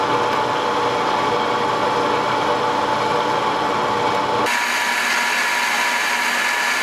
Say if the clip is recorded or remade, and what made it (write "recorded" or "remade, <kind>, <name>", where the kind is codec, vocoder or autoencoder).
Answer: recorded